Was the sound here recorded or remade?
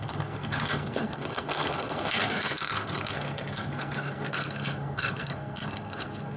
remade